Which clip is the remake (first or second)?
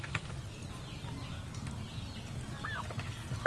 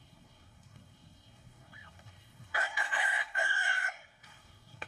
second